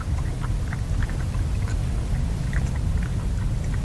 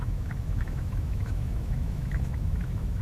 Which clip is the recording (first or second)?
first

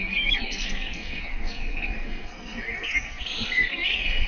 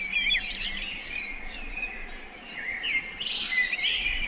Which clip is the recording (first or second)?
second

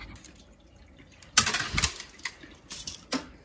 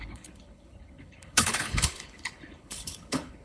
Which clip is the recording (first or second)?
first